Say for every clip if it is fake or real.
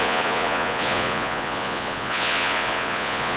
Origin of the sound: fake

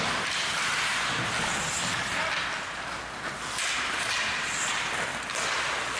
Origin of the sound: real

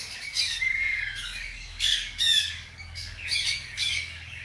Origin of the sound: fake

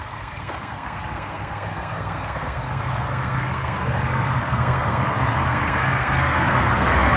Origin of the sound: fake